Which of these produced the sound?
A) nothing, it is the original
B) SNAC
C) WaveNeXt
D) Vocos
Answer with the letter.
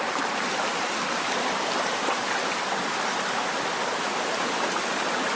A